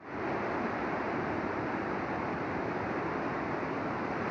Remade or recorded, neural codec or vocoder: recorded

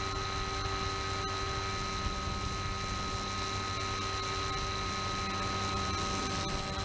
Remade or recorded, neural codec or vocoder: recorded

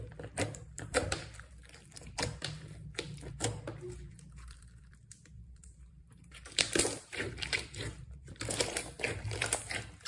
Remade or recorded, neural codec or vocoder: remade, vocoder, BigVGAN v2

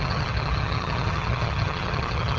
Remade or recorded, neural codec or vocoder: remade, vocoder, HiFi-GAN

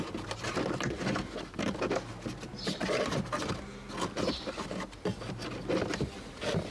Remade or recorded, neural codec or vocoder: recorded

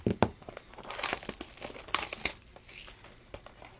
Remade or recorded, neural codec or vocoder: recorded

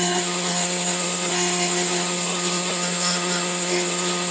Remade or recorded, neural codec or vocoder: remade, codec, SNAC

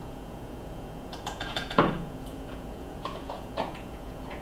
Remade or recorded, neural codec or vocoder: remade, vocoder, Vocos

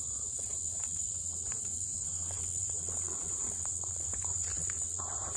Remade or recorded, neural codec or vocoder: remade, vocoder, Vocos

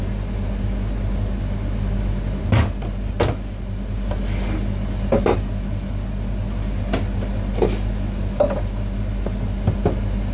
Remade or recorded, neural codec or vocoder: recorded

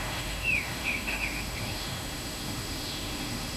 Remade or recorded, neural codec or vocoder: remade, autoencoder, DAC-VAE